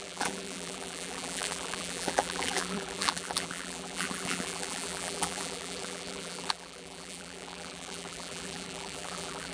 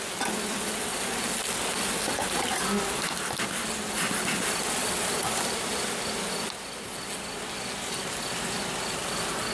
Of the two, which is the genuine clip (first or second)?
second